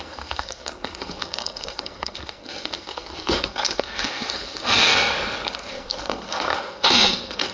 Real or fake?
fake